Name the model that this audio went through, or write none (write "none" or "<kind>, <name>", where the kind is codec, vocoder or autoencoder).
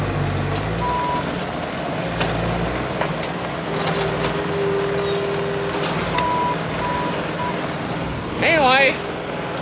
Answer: none